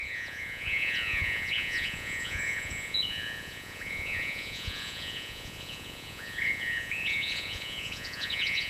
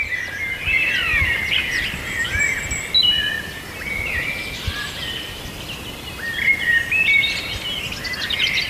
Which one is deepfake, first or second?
first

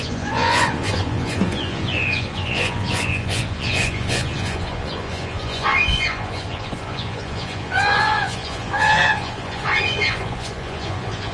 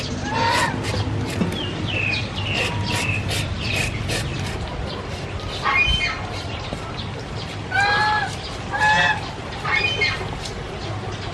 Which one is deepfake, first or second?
first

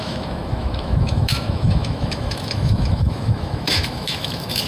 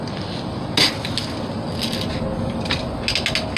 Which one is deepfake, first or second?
first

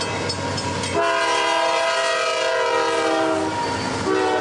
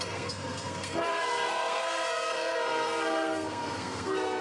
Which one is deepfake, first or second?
second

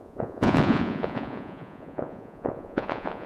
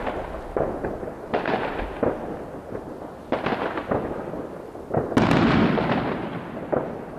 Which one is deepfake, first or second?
first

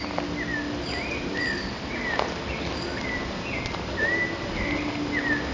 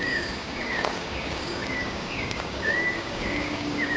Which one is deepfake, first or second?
second